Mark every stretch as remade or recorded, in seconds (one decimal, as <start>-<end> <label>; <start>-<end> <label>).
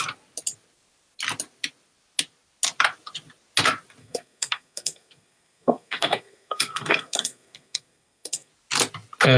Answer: 0.0-4.0 recorded; 4.0-8.5 remade; 8.5-9.4 recorded